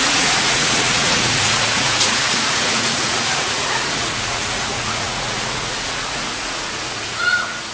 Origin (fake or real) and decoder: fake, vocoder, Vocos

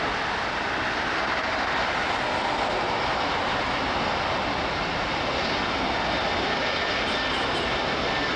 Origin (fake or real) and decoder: real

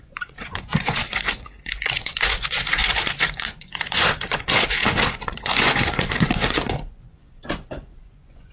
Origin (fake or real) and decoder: fake, vocoder, Vocos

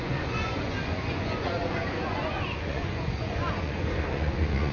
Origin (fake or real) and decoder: fake, vocoder, Vocos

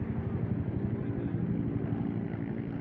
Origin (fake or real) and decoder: real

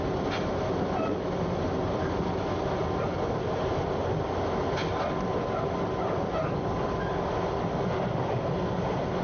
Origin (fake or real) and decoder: real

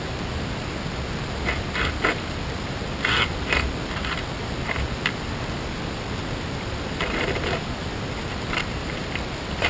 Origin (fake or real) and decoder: real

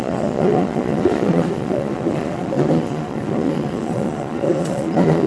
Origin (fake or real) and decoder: fake, vocoder, Vocos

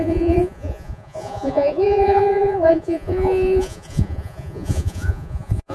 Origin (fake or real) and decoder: fake, vocoder, Vocos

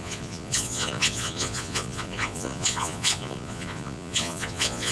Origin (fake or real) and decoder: fake, vocoder, Vocos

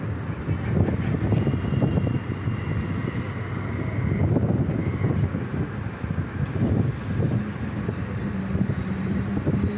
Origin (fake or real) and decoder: real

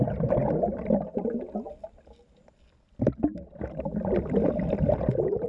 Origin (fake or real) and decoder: real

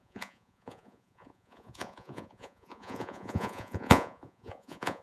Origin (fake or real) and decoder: fake, vocoder, Vocos